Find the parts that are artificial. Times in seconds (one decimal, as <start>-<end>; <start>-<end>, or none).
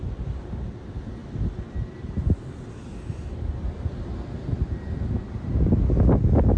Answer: none